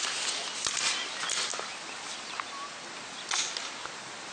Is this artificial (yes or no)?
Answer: no